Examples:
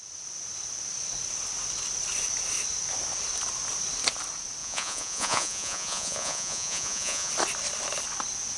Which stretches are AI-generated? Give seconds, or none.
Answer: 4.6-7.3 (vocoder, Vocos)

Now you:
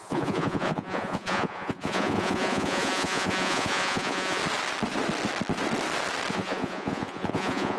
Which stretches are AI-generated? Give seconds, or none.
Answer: 0.0-4.4 (vocoder, Vocos); 6.3-7.8

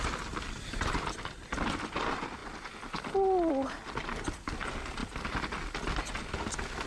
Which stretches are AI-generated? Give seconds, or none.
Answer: none

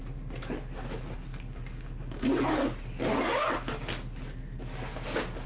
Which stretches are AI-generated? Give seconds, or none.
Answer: none

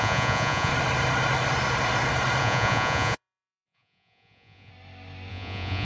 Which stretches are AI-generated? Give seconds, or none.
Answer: 0.0-0.7 (vocoder, Vocos); 2.4-4.7; 5.3-5.8